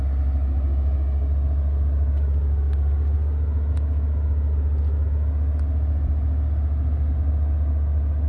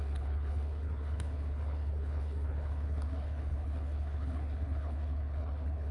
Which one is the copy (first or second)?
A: second